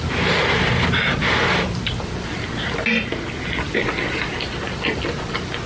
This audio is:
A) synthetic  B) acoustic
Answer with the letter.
B